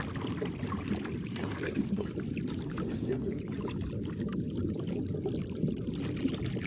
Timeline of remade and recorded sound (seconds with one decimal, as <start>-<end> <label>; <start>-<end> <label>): 0.0-1.3 recorded; 1.3-2.1 remade; 2.1-2.8 recorded; 2.8-3.4 remade; 3.4-6.7 recorded